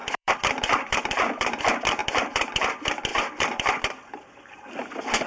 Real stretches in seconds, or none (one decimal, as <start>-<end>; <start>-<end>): 1.6-2.0; 2.6-3.1; 3.8-5.3